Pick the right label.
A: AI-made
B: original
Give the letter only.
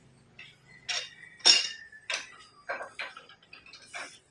B